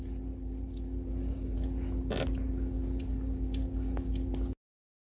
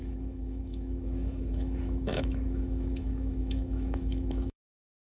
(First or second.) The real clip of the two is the first